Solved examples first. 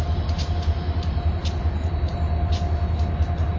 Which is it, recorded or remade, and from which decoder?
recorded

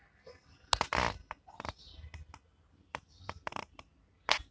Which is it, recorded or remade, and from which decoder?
recorded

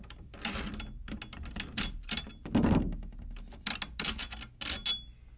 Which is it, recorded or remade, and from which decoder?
recorded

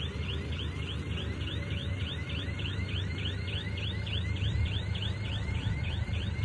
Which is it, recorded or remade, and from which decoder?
recorded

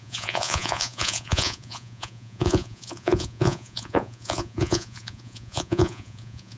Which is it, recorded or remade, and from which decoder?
remade, vocoder, Vocos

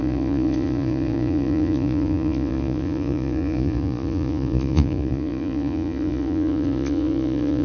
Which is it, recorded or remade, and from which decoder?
remade, vocoder, Vocos